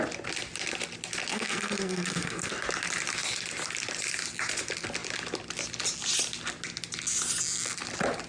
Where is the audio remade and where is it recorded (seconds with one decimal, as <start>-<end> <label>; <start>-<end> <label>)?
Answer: 0.0-1.3 recorded; 1.3-2.5 remade; 2.5-8.3 recorded